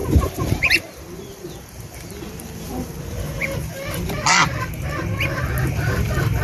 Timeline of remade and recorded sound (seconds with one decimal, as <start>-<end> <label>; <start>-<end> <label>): 0.0-2.9 remade; 2.9-6.4 recorded